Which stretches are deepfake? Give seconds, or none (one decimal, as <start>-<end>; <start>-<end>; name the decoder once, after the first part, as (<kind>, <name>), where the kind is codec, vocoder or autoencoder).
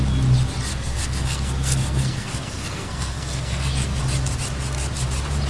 0.7-4.0 (codec, SNAC)